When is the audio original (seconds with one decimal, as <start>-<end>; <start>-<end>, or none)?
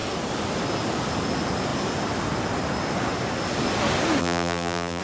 0.0-4.2